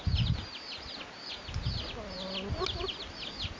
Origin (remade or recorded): recorded